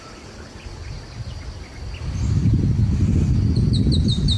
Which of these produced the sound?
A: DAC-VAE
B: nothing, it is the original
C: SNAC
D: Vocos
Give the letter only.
B